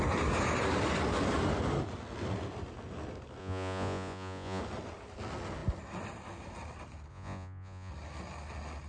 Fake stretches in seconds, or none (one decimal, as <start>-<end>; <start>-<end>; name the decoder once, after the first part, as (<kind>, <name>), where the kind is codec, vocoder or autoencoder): 3.4-4.6 (vocoder, Vocos); 7.1-7.9